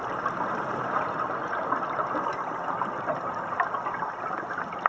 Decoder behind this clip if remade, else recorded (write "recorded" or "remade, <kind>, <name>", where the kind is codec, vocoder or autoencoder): recorded